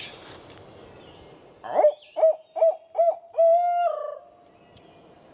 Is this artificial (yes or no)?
no